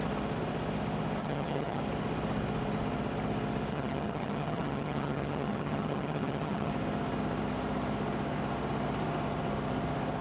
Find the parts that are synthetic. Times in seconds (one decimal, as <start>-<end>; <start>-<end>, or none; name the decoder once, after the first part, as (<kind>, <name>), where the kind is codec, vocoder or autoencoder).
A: 1.2-1.8 (vocoder, HiFi-GAN); 3.7-6.7

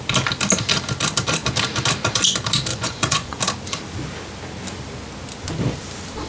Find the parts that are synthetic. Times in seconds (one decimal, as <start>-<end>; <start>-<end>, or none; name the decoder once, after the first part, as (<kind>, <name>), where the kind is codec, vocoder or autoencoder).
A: 2.7-3.4 (vocoder, Vocos)

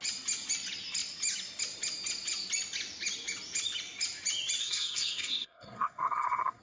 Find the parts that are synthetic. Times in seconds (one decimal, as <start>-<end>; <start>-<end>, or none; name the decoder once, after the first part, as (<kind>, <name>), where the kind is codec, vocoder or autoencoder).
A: 4.6-6.6 (codec, SNAC)

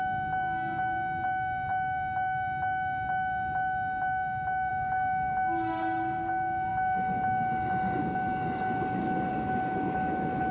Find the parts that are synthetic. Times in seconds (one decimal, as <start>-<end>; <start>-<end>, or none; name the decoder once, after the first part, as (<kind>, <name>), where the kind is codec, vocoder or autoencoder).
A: none

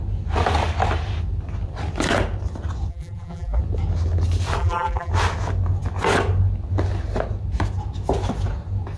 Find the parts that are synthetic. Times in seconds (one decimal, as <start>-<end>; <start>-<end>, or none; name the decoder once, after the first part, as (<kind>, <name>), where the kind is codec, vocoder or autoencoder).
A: 2.9-3.6 (vocoder, BigVGAN v2); 4.6-5.1

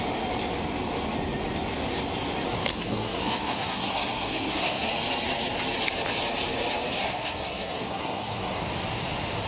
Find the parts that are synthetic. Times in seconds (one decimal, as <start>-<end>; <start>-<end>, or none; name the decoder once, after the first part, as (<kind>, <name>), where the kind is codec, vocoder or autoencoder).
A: 2.7-4.9 (codec, SNAC); 7.0-8.6

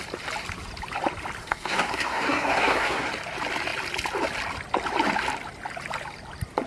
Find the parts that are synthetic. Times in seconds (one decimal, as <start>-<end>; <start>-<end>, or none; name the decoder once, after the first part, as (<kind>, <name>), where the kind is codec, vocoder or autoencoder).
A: 1.4-3.1 (codec, SNAC)

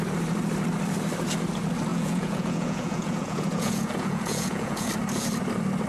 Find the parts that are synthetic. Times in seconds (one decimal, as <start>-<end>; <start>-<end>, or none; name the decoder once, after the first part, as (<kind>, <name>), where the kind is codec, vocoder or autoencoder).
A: 1.9-4.9 (vocoder, Vocos)